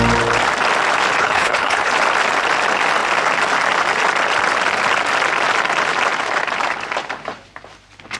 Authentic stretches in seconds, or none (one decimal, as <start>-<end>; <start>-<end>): 0.0-1.2; 1.9-8.2